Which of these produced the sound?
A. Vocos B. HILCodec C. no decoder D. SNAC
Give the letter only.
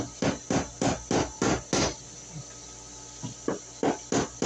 C